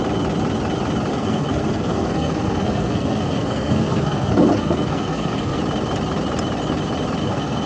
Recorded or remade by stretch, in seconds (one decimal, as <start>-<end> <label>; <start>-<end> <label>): 0.0-1.1 recorded; 1.1-5.6 remade; 5.6-7.2 recorded; 7.2-7.7 remade